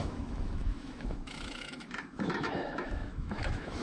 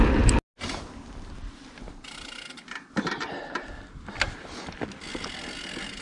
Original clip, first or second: second